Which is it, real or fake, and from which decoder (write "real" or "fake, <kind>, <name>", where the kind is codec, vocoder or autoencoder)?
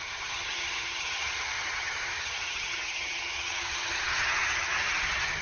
fake, vocoder, HiFi-GAN